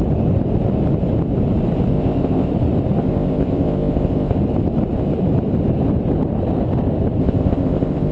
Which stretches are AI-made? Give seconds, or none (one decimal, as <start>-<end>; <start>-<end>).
1.9-2.5; 3.0-4.4; 7.2-8.1